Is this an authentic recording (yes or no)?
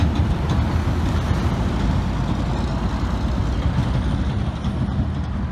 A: yes